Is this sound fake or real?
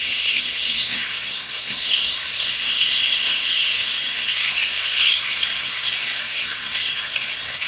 fake